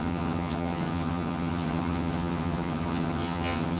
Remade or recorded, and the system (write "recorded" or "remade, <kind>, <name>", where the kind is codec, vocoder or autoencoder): remade, vocoder, HiFi-GAN